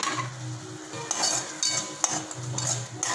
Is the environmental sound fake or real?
real